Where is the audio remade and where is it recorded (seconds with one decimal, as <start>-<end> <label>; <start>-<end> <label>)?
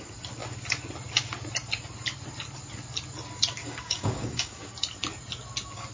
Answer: 0.0-3.6 recorded; 3.6-4.7 remade; 4.7-5.9 recorded